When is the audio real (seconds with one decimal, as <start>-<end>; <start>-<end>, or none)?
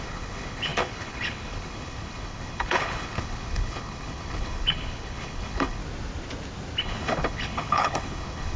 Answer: 5.8-6.8